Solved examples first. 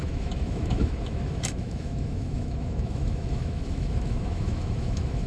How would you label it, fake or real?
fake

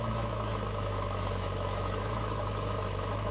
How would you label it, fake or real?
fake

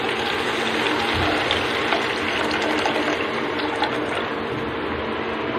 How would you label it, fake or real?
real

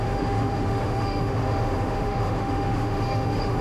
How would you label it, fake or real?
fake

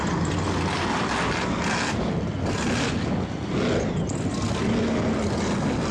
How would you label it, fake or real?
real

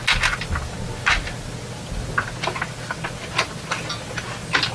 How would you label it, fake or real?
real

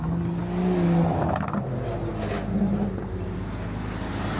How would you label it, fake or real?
real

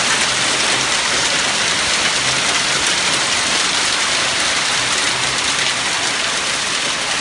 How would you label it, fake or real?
real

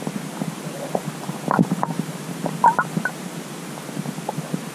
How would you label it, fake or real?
real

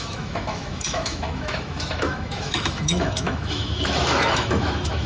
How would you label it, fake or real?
fake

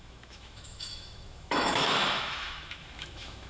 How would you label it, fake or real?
fake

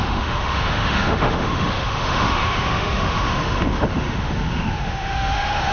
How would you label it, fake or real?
fake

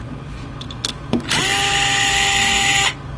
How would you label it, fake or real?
real